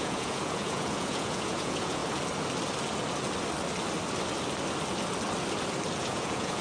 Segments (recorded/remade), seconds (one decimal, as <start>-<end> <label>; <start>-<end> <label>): 0.0-2.0 remade; 2.0-6.0 recorded; 6.0-6.6 remade